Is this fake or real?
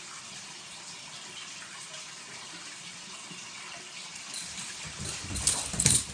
real